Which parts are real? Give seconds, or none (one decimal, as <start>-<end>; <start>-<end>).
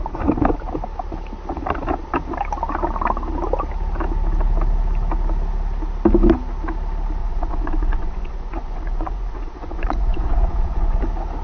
0.0-7.2; 11.0-11.4